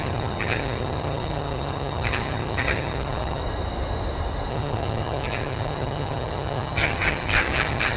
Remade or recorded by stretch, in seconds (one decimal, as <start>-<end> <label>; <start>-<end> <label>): 0.0-3.4 remade; 3.4-4.5 recorded; 4.5-8.0 remade

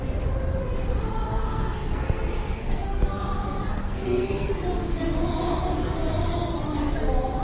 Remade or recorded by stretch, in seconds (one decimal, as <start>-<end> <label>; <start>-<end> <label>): 0.0-1.3 recorded; 1.3-3.0 remade; 3.0-3.7 recorded; 3.7-4.5 remade; 4.5-7.4 recorded

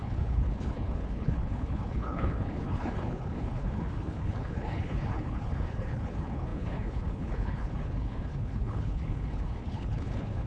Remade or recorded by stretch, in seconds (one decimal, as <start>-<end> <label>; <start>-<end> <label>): 0.0-10.5 remade

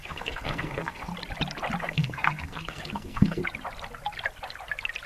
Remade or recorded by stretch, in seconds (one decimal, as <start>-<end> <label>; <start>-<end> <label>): 0.0-1.1 remade; 1.1-1.8 recorded; 1.8-3.4 remade; 3.4-5.1 recorded